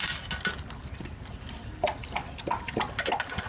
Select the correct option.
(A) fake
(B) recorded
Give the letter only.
B